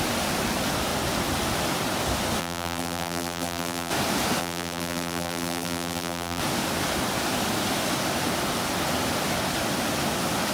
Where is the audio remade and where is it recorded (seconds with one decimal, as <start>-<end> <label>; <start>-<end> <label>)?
0.0-2.4 recorded; 2.4-3.9 remade; 3.9-4.4 recorded; 4.4-6.4 remade; 6.4-10.5 recorded